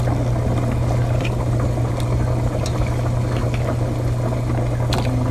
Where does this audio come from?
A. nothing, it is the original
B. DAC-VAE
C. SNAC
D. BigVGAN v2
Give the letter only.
A